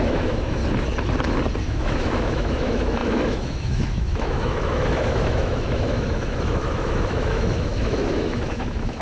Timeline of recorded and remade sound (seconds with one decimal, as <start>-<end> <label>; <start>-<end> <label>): 0.0-0.6 remade; 0.6-1.6 recorded; 1.6-9.0 remade